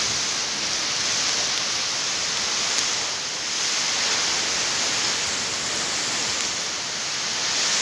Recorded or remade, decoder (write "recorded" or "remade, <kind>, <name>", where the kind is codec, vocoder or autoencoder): recorded